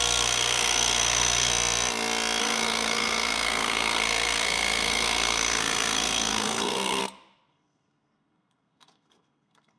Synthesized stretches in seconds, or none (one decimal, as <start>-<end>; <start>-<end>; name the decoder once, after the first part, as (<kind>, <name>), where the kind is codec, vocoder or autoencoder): 0.0-1.5 (codec, SNAC); 2.4-7.0; 7.5-9.8